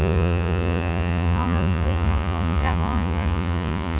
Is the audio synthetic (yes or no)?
yes